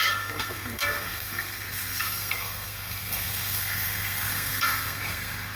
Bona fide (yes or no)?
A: no